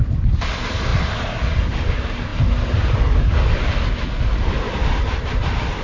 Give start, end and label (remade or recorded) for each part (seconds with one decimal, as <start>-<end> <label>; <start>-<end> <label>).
0.0-5.8 recorded